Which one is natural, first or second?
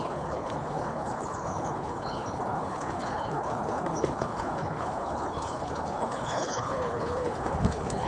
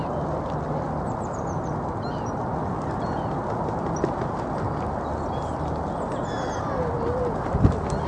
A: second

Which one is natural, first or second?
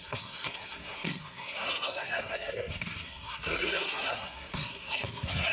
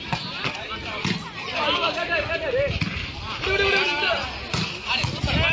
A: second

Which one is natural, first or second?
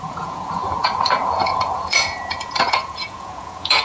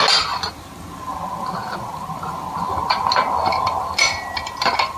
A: second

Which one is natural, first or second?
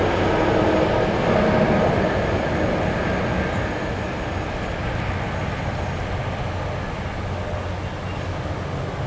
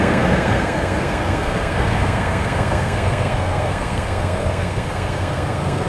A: first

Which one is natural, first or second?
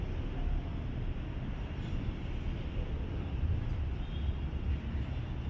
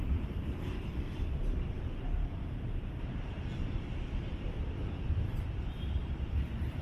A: first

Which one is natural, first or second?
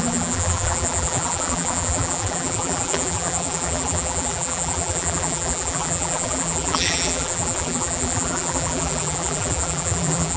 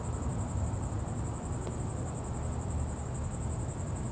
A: second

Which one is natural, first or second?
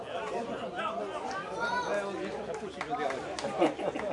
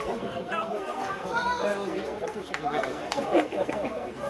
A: first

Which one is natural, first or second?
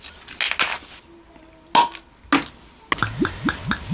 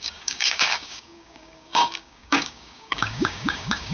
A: first